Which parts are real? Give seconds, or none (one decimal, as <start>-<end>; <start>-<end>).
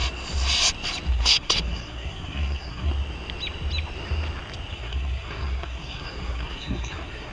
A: 0.0-1.1; 2.9-4.7